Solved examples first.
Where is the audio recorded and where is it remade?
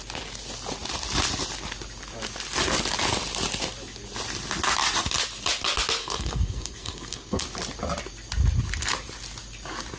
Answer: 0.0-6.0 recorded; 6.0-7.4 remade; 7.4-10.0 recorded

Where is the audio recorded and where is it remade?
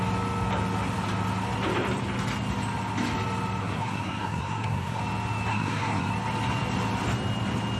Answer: 0.0-3.6 recorded; 3.6-5.0 remade; 5.0-5.5 recorded; 5.5-6.1 remade; 6.1-7.8 recorded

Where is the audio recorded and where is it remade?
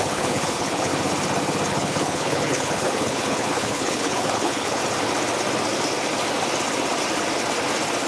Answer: 0.0-0.9 remade; 0.9-1.7 recorded; 1.7-4.8 remade; 4.8-8.1 recorded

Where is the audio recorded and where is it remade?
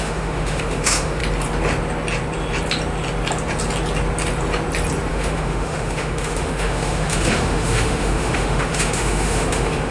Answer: 0.0-1.2 remade; 1.2-5.1 recorded; 5.1-9.9 remade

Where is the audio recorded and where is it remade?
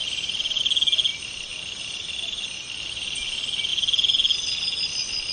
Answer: 0.0-0.6 remade; 0.6-1.1 recorded; 1.1-2.8 remade; 2.8-5.3 recorded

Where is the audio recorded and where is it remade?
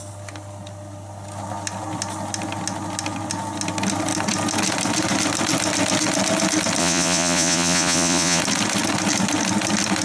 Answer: 0.0-6.8 recorded; 6.8-8.4 remade; 8.4-10.0 recorded